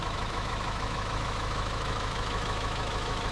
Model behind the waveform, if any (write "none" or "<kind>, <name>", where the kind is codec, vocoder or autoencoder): autoencoder, DAC-VAE